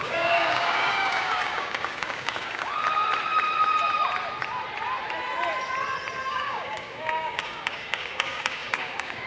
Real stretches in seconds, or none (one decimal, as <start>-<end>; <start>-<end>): 2.7-6.3